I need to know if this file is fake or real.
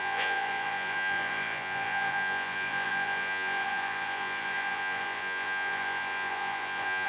fake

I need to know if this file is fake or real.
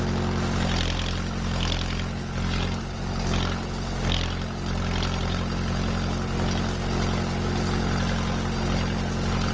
real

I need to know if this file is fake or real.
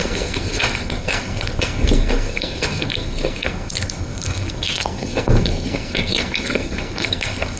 fake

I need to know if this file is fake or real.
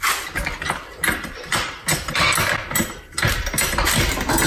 real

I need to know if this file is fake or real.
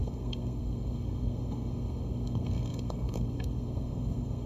fake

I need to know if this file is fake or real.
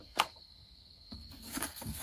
fake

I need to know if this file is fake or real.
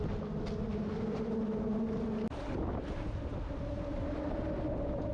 real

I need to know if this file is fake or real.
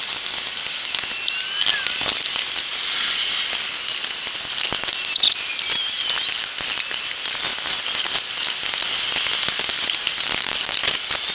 real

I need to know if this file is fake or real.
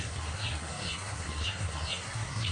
fake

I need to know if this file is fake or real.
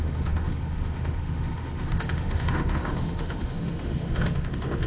fake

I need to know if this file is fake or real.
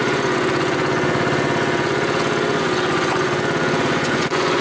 fake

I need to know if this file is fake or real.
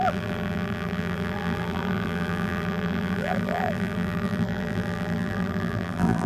fake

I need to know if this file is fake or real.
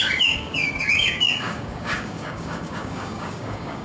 fake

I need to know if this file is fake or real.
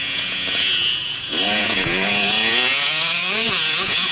fake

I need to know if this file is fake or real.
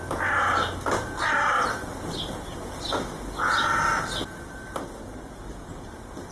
real